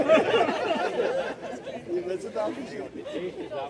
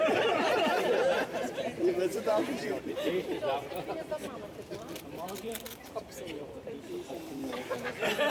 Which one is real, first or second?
first